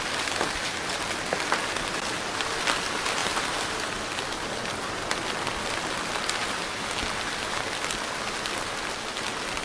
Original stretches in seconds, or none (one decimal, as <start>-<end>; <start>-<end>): 0.0-9.6